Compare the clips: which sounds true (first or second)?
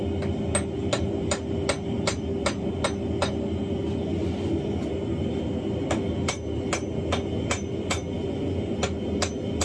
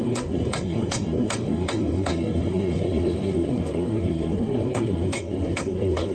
first